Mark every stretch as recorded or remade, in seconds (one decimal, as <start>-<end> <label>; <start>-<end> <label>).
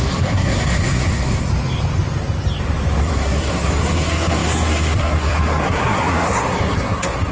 0.0-1.5 remade; 1.5-3.0 recorded; 3.0-7.3 remade